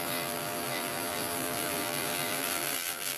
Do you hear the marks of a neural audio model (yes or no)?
yes